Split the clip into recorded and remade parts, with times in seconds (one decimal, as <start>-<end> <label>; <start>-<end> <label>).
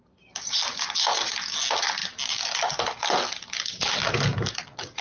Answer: 0.0-5.0 recorded